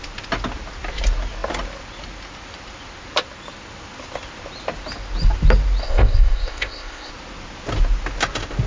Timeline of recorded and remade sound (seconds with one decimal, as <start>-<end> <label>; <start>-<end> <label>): 0.0-5.8 recorded; 5.8-7.1 remade; 7.1-8.7 recorded